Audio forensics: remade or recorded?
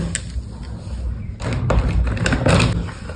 recorded